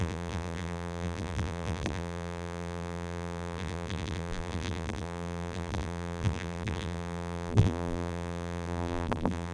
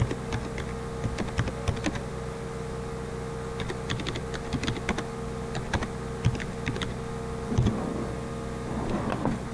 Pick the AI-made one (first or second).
first